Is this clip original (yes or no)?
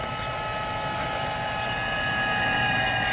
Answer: yes